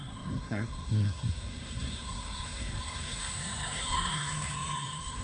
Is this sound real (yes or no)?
no